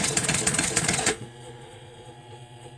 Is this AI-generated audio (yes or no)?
yes